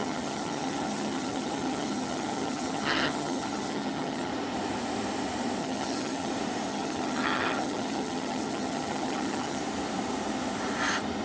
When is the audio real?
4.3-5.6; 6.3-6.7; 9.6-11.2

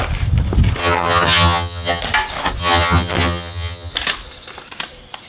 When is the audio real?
0.0-0.8; 2.0-2.6; 3.9-5.3

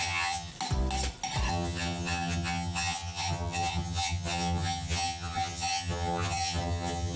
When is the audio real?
0.5-1.5

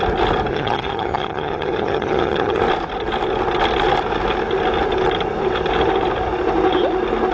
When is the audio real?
0.0-0.5; 2.6-7.3